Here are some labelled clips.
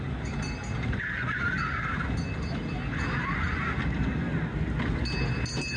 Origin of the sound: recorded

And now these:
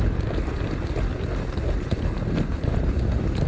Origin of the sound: recorded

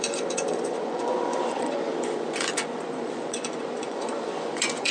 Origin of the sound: remade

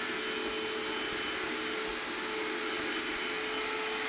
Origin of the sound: recorded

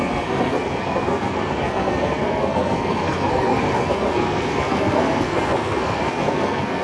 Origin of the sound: remade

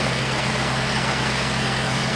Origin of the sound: remade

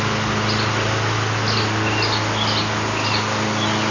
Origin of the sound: recorded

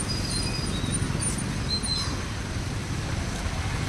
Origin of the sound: recorded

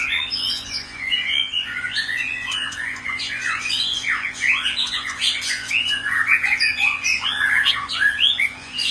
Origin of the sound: remade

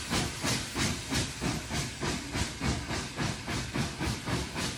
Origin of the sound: remade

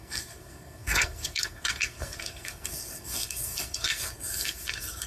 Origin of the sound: remade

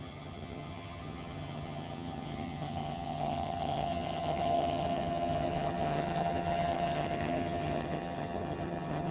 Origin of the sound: remade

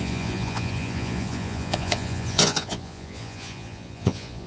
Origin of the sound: remade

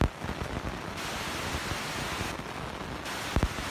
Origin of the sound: recorded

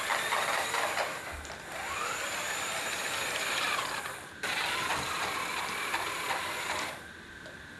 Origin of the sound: recorded